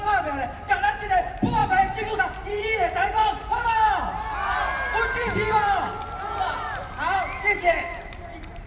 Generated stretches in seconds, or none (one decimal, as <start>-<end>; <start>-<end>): 0.0-8.7